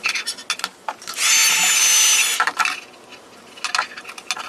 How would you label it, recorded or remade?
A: recorded